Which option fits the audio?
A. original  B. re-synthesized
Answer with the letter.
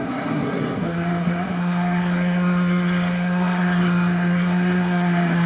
B